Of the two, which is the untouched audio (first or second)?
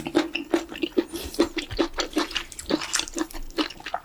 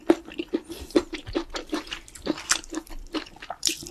first